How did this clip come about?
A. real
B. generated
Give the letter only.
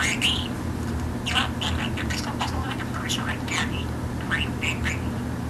A